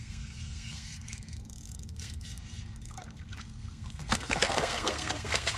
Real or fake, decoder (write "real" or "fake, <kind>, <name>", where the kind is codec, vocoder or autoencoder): fake, codec, SNAC